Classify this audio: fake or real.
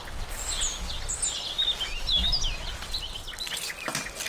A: real